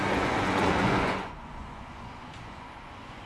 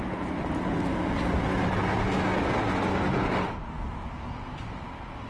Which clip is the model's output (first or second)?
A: first